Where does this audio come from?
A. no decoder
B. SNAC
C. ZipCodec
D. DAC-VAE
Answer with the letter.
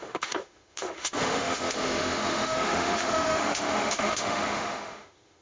D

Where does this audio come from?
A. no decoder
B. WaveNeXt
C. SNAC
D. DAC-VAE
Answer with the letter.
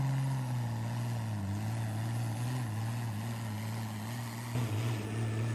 A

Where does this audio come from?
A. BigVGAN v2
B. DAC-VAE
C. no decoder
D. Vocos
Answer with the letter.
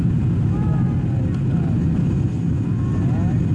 C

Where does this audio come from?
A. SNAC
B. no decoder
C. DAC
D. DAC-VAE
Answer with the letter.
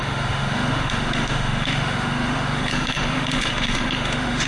D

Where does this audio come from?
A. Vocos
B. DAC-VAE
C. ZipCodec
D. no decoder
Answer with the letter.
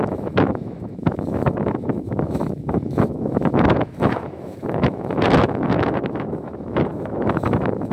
B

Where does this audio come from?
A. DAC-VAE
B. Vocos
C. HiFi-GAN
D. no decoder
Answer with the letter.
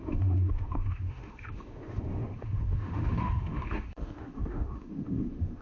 A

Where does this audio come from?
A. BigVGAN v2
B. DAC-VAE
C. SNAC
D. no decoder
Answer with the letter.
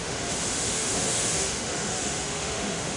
B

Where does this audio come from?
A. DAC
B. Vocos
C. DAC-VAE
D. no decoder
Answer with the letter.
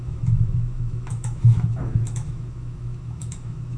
C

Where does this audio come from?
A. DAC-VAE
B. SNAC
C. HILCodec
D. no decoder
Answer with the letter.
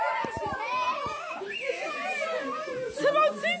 D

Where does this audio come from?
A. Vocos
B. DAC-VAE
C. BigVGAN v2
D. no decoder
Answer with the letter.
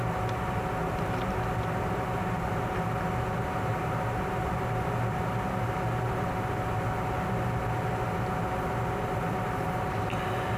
D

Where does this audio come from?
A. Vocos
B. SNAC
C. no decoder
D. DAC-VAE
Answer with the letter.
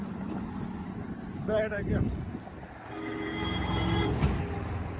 C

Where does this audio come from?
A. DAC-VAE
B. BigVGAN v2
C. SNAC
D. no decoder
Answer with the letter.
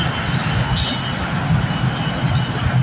D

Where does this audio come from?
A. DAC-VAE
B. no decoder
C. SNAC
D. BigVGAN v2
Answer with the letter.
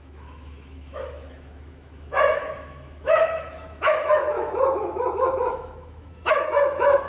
A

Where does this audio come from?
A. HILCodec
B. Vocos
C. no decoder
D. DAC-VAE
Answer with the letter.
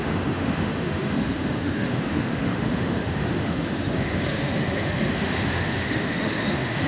D